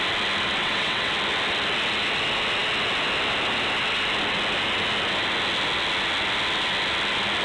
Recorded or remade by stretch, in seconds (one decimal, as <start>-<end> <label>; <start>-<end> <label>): 0.0-0.6 recorded; 0.6-1.1 remade; 1.1-7.4 recorded